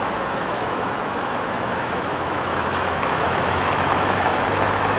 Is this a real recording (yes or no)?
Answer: no